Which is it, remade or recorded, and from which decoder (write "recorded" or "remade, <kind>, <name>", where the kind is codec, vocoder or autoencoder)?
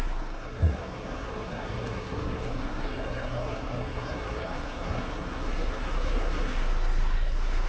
remade, codec, SNAC